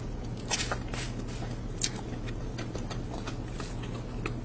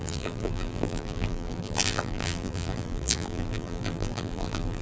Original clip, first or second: first